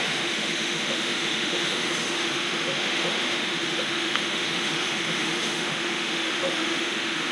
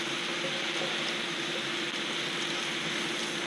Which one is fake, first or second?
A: first